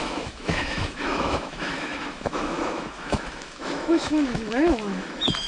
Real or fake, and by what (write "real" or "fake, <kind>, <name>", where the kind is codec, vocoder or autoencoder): fake, autoencoder, DAC-VAE